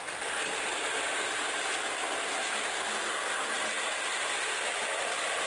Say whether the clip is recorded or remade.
remade